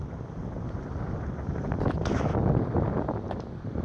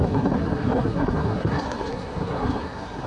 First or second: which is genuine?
first